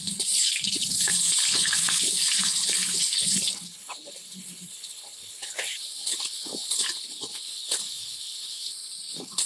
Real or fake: fake